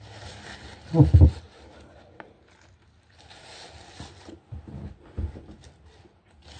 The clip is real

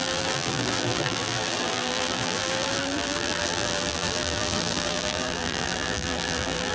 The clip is fake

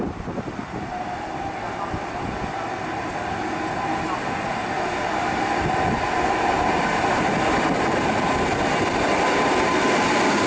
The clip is real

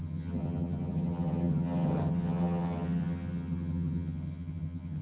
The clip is fake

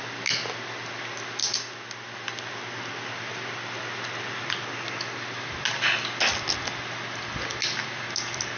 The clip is real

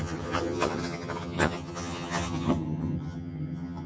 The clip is fake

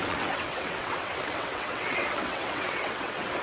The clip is fake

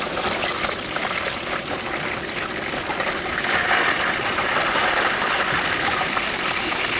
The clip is real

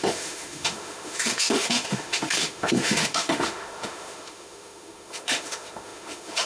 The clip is fake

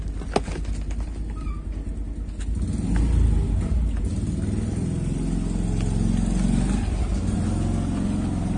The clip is real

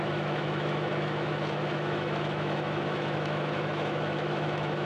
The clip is fake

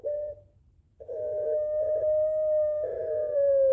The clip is real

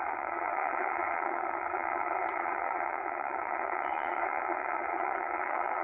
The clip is fake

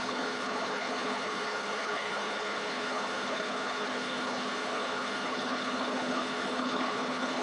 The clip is fake